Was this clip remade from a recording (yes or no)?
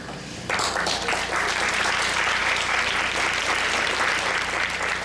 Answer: no